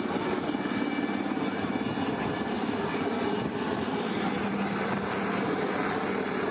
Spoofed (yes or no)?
no